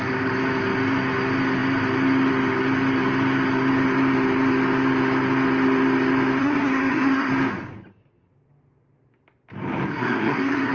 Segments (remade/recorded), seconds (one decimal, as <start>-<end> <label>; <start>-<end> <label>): 0.0-6.4 recorded; 6.4-7.3 remade; 7.3-9.9 recorded; 9.9-10.7 remade